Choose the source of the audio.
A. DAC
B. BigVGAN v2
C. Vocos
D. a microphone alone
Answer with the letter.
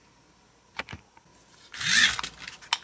D